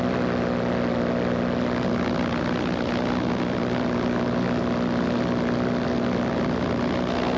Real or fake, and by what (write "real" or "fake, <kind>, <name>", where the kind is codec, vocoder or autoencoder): real